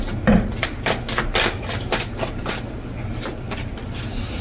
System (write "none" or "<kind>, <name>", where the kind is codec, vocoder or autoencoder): none